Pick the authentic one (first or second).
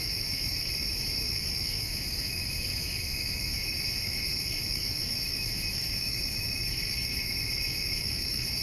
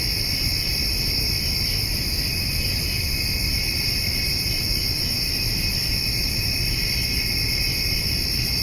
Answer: second